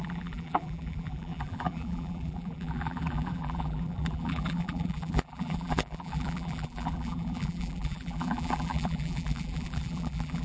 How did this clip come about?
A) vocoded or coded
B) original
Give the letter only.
A